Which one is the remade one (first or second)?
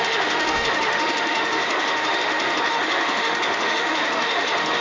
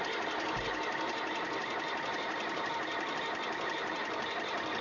first